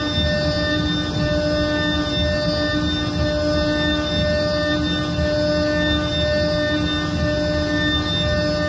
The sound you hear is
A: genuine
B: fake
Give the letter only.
A